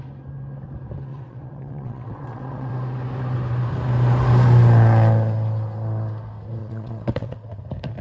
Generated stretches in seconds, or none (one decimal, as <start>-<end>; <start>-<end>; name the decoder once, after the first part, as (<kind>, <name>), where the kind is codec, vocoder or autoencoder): 1.1-2.7 (vocoder, WaveNeXt); 6.6-7.6